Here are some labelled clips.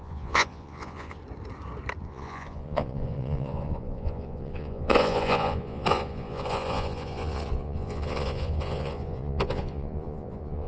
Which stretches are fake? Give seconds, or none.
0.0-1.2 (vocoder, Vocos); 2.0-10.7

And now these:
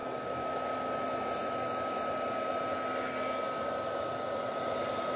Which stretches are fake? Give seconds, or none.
0.0-0.7 (autoencoder, DAC-VAE)

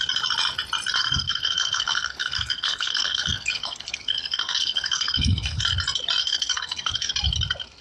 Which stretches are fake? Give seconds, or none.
1.0-5.6 (codec, SNAC); 6.2-7.1